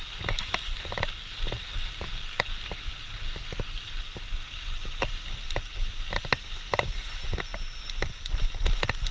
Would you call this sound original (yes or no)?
yes